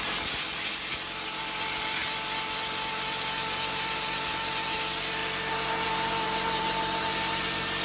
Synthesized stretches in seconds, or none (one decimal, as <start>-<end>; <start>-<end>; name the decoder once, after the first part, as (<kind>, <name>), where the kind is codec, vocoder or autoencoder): none